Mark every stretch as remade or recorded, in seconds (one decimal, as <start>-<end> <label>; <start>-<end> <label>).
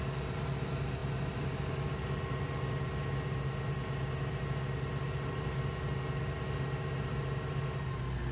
0.0-8.3 recorded